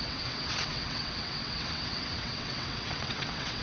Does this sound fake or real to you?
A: fake